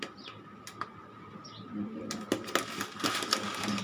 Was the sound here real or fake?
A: real